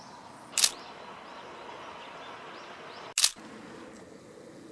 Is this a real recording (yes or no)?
yes